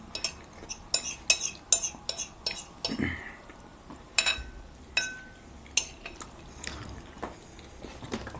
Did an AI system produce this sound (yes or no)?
no